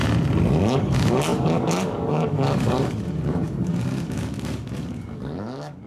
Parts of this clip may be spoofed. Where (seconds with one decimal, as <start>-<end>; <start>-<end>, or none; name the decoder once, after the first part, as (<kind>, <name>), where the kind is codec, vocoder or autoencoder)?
0.5-5.9 (codec, DAC)